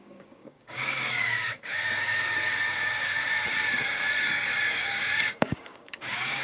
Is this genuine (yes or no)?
no